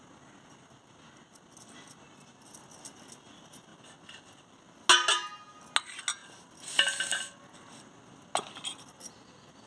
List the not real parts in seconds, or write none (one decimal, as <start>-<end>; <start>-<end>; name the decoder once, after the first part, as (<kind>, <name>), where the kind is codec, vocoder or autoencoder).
none